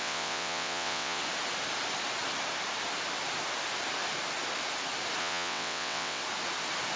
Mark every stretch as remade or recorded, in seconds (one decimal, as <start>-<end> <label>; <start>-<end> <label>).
0.0-1.2 remade; 1.2-5.2 recorded; 5.2-6.2 remade; 6.2-7.0 recorded